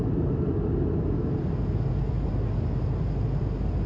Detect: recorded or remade recorded